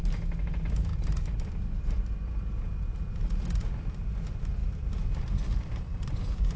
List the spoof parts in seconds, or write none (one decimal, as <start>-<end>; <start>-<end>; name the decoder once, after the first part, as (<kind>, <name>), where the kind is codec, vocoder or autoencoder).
none